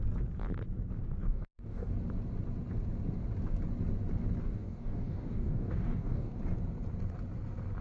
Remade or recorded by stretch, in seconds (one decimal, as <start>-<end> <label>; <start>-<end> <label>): 0.0-1.2 recorded; 1.2-1.9 remade; 1.9-4.4 recorded; 4.4-6.4 remade; 6.4-7.8 recorded